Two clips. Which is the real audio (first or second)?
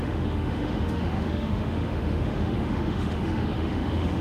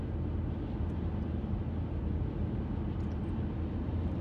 second